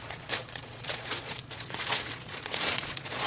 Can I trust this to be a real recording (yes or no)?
no